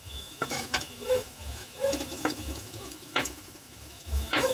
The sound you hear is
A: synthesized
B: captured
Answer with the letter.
A